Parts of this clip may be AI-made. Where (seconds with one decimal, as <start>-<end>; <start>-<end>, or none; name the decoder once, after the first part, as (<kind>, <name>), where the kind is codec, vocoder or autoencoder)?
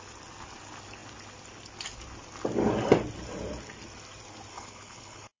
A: 4.5-5.4 (codec, HILCodec)